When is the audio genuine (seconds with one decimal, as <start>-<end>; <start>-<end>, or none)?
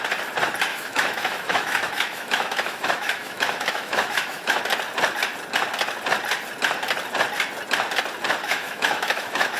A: 0.0-0.7; 4.6-8.4